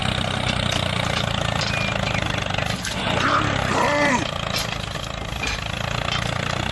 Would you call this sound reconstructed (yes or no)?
no